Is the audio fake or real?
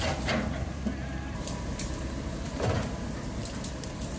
fake